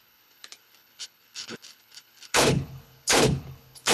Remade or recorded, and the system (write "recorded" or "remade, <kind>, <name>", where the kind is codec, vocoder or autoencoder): remade, codec, HILCodec